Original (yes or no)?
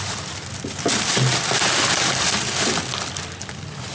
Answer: yes